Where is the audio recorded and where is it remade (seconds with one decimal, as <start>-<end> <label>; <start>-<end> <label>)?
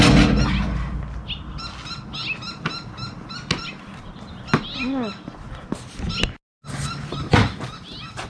0.0-8.3 recorded